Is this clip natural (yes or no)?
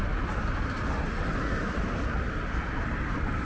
yes